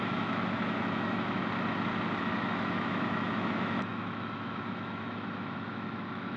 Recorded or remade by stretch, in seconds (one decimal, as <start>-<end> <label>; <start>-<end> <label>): 0.0-1.4 remade; 1.4-2.2 recorded; 2.2-6.4 remade